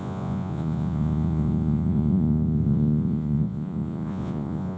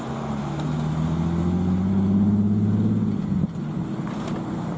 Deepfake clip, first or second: first